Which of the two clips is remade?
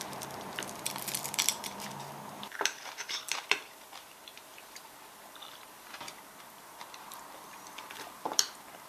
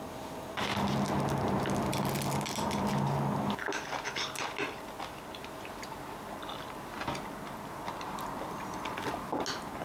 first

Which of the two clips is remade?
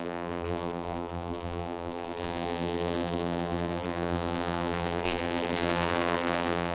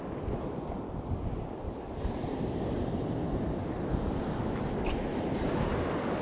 first